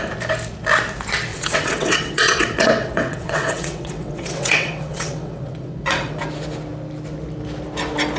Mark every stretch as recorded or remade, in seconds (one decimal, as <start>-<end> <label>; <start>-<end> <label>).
0.0-1.3 recorded; 1.3-6.2 remade; 6.2-8.2 recorded